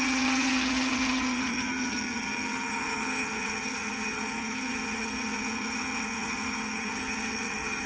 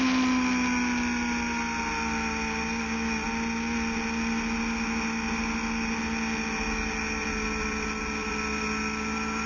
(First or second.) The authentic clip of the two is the second